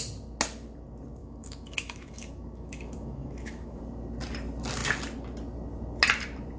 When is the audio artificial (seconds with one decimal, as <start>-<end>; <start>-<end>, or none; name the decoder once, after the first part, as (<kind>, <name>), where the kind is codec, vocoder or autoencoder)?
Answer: 1.2-3.8 (autoencoder, DAC-VAE)